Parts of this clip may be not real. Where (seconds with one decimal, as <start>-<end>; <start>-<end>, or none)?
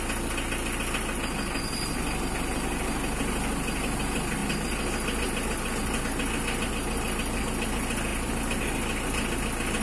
8.1-8.6